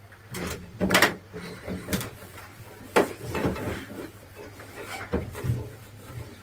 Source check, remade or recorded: remade